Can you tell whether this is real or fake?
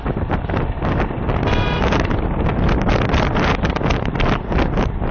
real